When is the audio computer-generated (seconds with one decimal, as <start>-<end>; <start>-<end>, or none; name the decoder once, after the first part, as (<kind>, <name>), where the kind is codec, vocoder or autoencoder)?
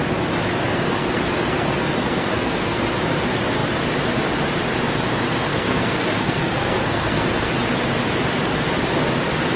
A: 0.5-2.8 (codec, SNAC); 5.5-7.5